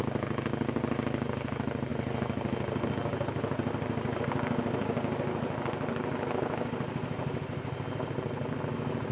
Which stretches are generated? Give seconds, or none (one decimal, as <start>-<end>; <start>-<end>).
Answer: none